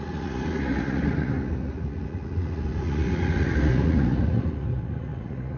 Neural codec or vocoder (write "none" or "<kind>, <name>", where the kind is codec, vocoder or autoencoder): vocoder, Vocos